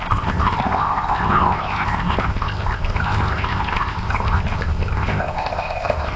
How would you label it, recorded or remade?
remade